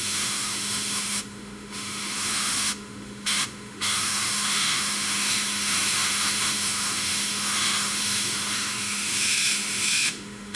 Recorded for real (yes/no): no